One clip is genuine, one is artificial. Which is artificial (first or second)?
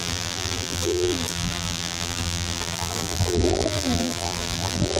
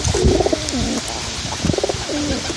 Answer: first